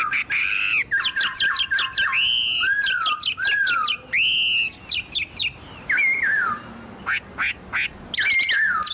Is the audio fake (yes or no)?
no